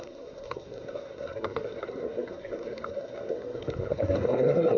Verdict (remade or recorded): remade